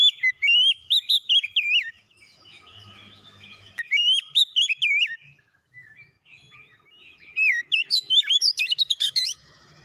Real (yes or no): no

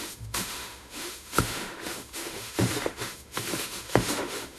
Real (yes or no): no